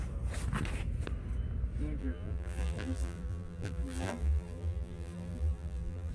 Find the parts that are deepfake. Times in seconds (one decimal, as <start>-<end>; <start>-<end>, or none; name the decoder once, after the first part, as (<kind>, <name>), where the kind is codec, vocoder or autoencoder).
2.0-6.1 (vocoder, BigVGAN v2)